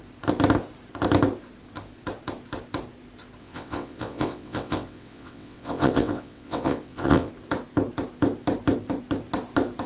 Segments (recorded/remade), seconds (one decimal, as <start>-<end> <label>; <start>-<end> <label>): 0.0-3.4 recorded; 3.4-7.3 remade; 7.3-9.9 recorded